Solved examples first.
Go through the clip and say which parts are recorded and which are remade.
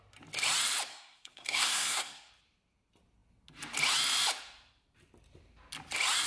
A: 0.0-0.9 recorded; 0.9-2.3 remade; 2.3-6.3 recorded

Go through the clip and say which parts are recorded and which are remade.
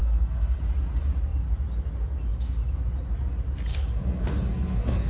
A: 0.0-0.6 remade; 0.6-3.7 recorded; 3.7-5.1 remade